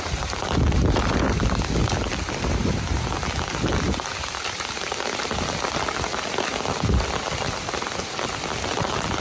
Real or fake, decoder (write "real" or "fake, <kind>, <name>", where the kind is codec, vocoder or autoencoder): real